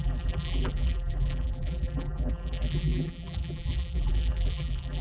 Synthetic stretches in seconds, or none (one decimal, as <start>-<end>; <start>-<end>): 0.0-5.0